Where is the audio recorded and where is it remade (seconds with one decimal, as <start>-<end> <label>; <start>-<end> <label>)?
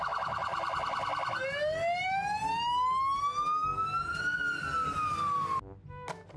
0.0-6.4 recorded